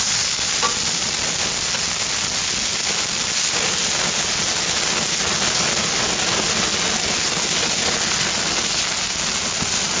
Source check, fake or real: real